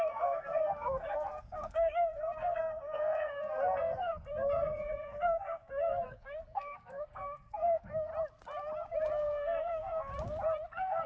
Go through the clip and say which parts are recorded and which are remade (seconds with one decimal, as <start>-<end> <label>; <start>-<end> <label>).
0.0-8.1 remade; 8.1-9.2 recorded; 9.2-10.1 remade; 10.1-10.7 recorded; 10.7-11.1 remade